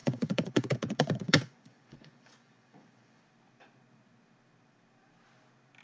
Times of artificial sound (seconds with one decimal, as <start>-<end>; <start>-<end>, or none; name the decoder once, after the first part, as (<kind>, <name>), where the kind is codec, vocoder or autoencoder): 0.0-3.2 (vocoder, Vocos)